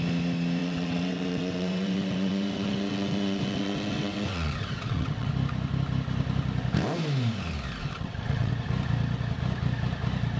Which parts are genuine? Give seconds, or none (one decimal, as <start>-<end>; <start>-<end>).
0.0-0.6; 5.3-7.8; 8.5-10.4